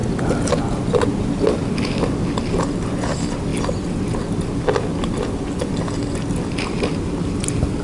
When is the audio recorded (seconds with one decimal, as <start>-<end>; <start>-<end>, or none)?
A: 0.0-7.8